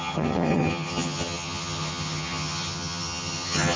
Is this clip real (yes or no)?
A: no